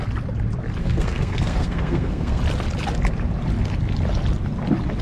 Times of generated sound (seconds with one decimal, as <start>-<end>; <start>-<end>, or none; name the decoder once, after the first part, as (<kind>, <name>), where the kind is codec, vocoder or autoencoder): 0.8-2.4 (codec, SNAC)